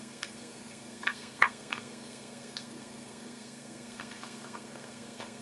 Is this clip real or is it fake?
fake